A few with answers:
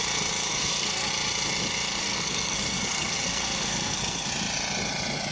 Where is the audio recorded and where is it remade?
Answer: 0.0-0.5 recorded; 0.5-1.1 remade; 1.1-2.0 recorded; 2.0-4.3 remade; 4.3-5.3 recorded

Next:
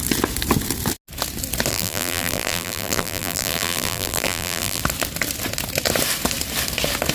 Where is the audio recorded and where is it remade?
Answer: 0.0-1.7 recorded; 1.7-4.8 remade; 4.8-7.1 recorded